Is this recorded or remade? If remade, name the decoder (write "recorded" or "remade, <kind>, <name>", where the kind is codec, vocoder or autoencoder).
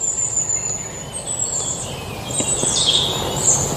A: recorded